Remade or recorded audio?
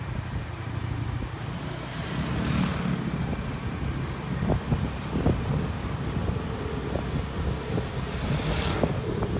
recorded